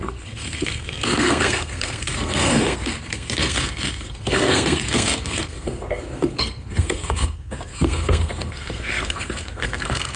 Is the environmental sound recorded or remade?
remade